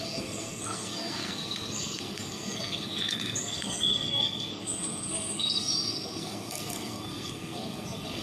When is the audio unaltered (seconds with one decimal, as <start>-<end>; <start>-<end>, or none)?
none